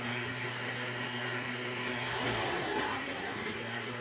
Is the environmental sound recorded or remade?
remade